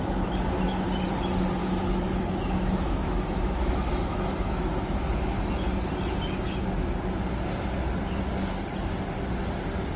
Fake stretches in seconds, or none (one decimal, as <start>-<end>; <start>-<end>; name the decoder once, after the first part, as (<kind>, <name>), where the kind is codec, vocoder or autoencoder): 1.6-5.0 (autoencoder, DAC-VAE)